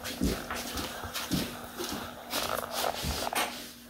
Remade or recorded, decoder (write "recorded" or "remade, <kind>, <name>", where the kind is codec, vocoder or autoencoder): recorded